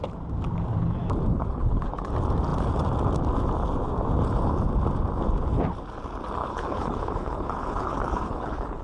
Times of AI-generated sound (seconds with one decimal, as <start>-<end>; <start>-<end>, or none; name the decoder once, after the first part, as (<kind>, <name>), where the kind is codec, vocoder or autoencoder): 1.3-2.1 (codec, HILCodec); 6.4-8.8